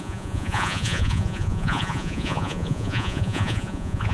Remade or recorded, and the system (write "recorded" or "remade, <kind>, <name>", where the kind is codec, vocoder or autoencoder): remade, vocoder, Vocos